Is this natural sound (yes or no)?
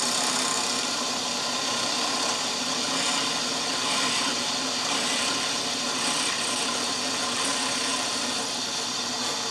yes